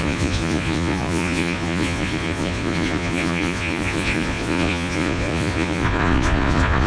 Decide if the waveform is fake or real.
fake